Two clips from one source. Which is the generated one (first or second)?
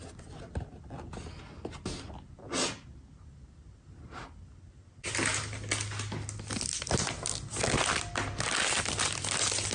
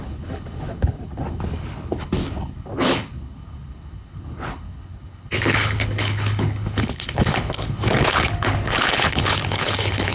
second